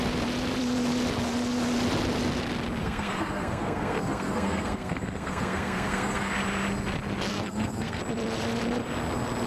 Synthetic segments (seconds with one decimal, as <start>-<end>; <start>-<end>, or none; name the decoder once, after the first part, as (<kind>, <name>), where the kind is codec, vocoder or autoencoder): 2.8-6.3 (codec, SNAC); 7.3-8.0